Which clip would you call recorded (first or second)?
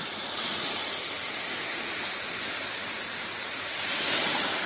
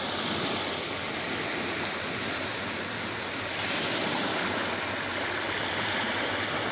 second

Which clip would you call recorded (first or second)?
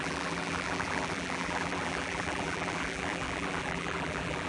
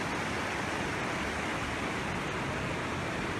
second